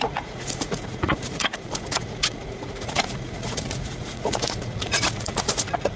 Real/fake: fake